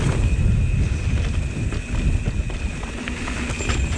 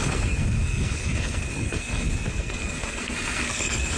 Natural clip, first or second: first